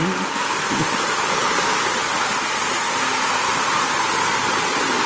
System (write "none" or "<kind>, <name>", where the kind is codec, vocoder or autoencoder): vocoder, BigVGAN v2